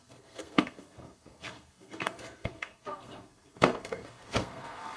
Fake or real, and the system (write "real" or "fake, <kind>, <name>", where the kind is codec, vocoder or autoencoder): fake, codec, SNAC